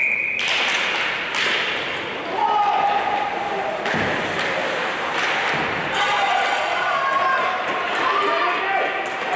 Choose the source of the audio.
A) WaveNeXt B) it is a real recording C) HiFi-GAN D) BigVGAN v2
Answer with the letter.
B